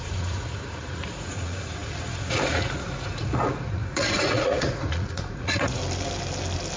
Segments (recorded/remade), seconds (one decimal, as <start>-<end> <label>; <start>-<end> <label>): 0.0-5.8 remade; 5.8-6.8 recorded

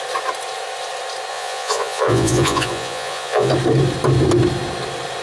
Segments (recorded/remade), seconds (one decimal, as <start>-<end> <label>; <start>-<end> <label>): 0.0-1.3 recorded; 1.3-3.5 remade; 3.5-5.2 recorded

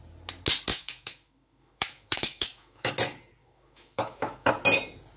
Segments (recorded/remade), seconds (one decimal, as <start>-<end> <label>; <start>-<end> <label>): 0.0-0.7 recorded; 0.7-2.9 remade; 2.9-3.4 recorded; 3.4-4.5 remade; 4.5-5.2 recorded

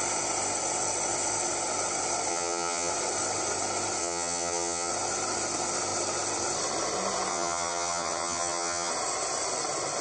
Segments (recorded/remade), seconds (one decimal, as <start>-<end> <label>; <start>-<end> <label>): 0.0-2.3 recorded; 2.3-2.9 remade; 2.9-4.0 recorded; 4.0-4.9 remade; 4.9-7.3 recorded; 7.3-8.9 remade; 8.9-10.0 recorded

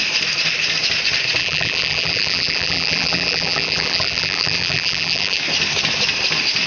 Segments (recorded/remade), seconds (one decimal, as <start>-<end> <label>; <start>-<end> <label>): 0.0-1.4 recorded; 1.4-5.4 remade; 5.4-6.7 recorded

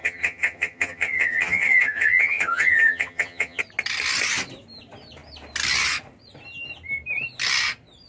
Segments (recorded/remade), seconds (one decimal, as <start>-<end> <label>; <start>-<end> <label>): 0.0-3.6 remade; 3.6-8.1 recorded

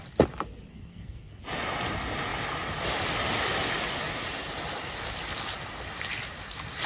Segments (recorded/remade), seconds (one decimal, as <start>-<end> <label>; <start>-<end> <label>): 0.0-0.7 recorded; 0.7-1.4 remade; 1.4-6.9 recorded

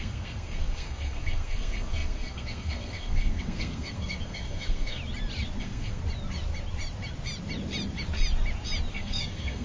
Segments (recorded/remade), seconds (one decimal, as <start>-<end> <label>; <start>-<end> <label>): 0.0-5.0 remade; 5.0-5.6 recorded; 5.6-6.0 remade; 6.0-8.9 recorded; 8.9-9.6 remade